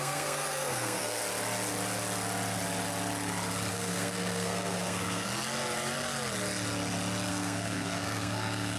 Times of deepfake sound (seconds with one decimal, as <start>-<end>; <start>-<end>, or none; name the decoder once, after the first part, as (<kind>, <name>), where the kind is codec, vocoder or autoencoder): 0.0-1.2 (codec, SNAC); 3.7-5.3; 7.3-8.8